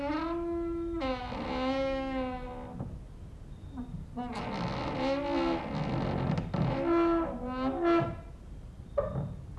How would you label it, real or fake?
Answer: real